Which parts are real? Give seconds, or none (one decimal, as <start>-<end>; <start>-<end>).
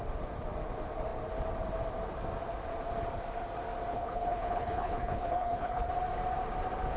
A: 0.0-3.9; 5.9-7.0